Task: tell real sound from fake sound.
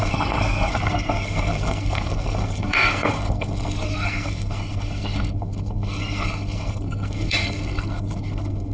fake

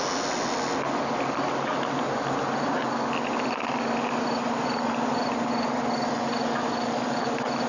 real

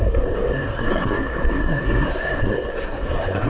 fake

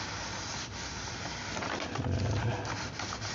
real